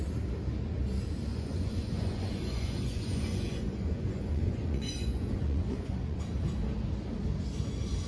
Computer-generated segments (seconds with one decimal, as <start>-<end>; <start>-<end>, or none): 1.3-6.2